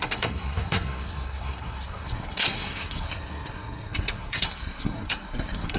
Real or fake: fake